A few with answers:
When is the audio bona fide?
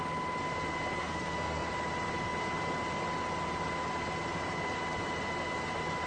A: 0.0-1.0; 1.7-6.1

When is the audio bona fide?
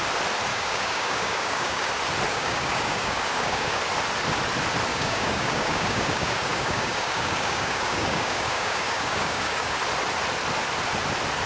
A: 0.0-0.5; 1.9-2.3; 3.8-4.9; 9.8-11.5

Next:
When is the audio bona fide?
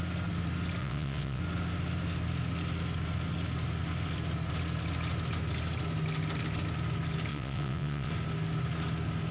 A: 0.0-0.8; 1.4-7.3; 8.1-9.3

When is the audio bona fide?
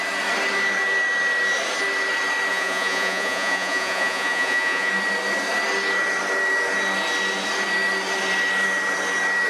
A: 0.0-2.5; 4.9-9.5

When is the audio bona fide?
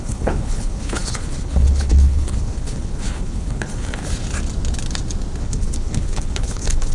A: 4.0-5.4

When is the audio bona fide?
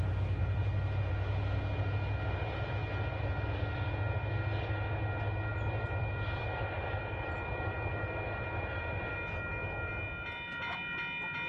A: 0.0-5.5; 9.1-11.5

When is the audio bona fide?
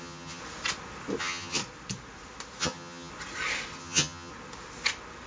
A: 0.4-1.2; 1.6-2.6; 3.1-3.8; 4.3-5.3